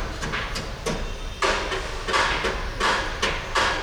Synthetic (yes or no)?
no